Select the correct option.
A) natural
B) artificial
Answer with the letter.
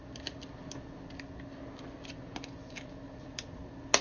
A